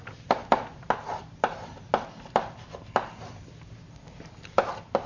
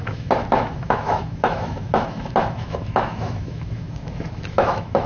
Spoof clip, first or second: second